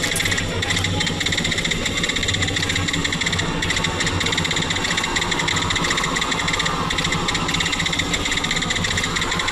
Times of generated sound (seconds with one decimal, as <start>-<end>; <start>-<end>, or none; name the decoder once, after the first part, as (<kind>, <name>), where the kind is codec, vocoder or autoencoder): none